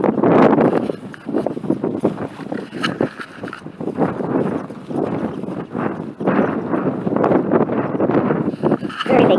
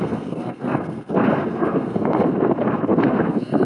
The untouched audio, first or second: first